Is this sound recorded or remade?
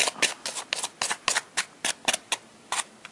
recorded